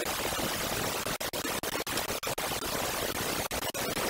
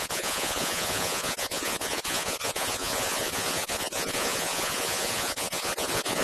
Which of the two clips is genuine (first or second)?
first